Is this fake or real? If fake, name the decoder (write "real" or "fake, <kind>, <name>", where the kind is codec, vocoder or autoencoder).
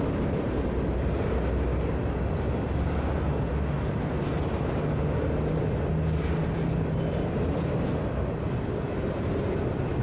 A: real